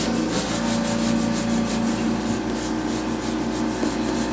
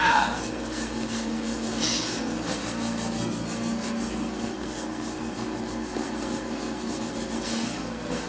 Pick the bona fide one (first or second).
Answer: first